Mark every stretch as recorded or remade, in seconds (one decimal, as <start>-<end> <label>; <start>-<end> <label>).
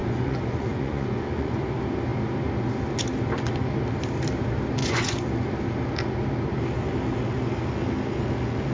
0.0-1.6 remade; 1.6-4.8 recorded; 4.8-5.3 remade; 5.3-8.7 recorded